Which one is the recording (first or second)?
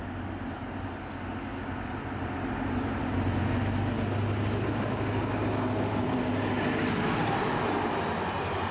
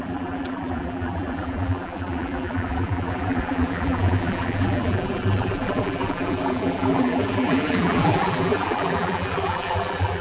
first